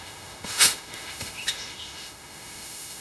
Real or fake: fake